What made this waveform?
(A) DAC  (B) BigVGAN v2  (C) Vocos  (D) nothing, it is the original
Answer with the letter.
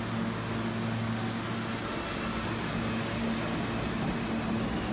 D